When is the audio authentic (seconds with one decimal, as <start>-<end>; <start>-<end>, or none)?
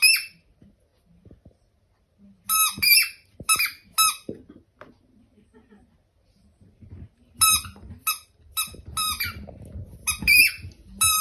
0.0-11.2